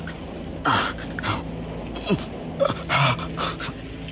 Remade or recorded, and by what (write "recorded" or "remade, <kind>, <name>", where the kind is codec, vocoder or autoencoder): recorded